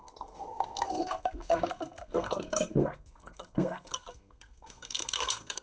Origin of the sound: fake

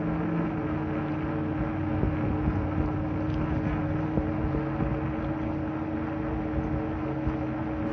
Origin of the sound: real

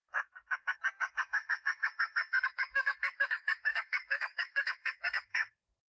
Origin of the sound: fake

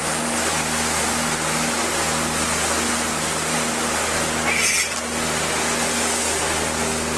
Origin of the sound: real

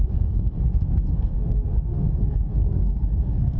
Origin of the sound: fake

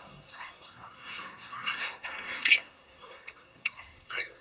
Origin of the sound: fake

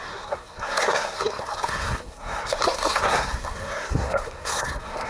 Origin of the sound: fake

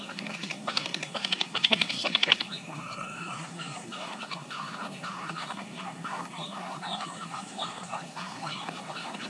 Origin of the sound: fake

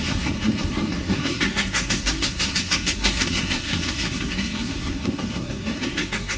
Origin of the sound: fake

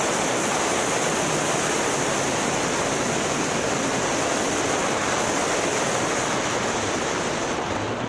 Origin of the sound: real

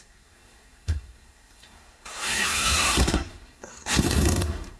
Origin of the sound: fake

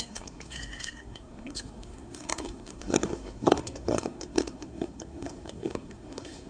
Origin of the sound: fake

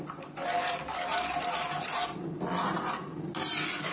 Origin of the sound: real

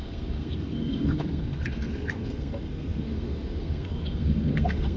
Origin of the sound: fake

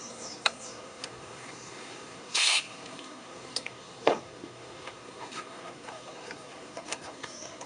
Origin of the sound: fake